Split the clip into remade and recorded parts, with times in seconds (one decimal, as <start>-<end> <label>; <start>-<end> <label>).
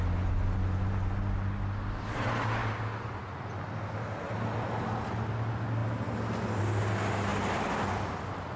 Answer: 0.0-8.6 recorded